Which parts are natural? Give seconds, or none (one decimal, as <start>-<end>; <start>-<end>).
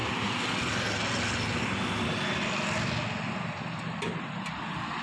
0.0-5.0